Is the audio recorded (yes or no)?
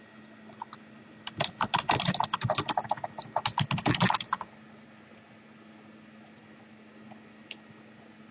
yes